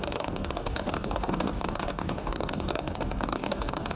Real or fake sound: fake